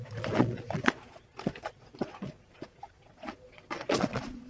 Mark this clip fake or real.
fake